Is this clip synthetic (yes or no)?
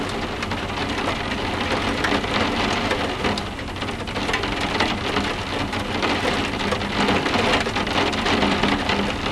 no